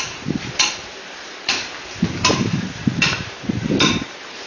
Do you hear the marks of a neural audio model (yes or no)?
yes